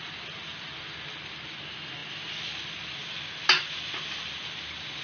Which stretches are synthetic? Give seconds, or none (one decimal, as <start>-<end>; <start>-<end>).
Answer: none